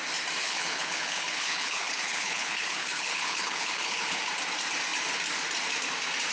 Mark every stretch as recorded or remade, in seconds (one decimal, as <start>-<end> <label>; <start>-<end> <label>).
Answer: 0.0-0.4 recorded; 0.4-4.2 remade; 4.2-6.3 recorded